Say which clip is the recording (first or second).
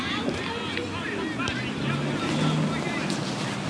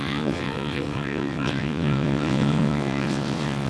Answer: first